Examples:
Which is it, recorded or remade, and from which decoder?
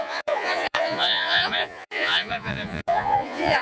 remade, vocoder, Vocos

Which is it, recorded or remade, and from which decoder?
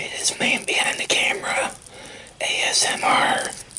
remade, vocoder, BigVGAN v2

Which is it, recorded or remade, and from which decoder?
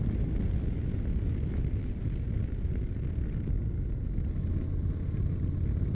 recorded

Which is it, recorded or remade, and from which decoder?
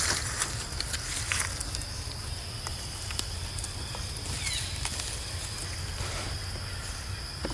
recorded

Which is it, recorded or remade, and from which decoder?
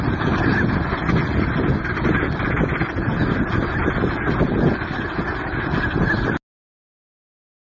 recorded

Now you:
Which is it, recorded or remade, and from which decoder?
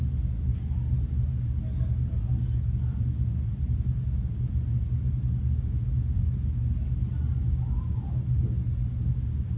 recorded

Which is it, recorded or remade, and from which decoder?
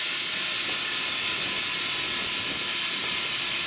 recorded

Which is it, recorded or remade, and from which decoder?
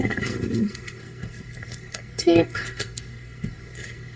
remade, codec, SNAC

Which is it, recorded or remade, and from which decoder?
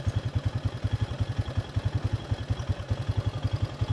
recorded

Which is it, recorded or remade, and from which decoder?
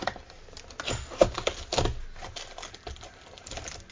recorded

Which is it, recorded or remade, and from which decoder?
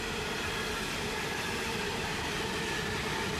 recorded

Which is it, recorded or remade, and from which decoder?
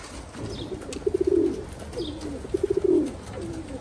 recorded